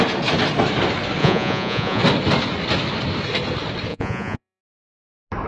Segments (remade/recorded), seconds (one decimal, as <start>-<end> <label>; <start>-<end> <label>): 0.0-1.2 recorded; 1.2-2.0 remade; 2.0-3.9 recorded; 3.9-4.6 remade; 4.6-5.5 recorded